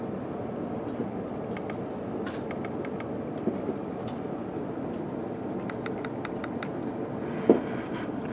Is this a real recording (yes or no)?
yes